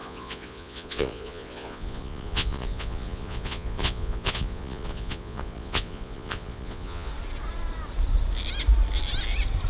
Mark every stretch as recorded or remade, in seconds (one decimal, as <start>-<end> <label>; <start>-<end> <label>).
0.0-7.1 remade; 7.1-9.7 recorded